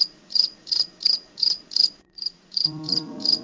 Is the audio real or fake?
fake